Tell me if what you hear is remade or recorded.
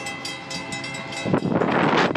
recorded